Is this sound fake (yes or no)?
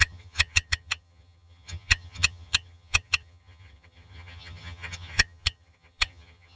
yes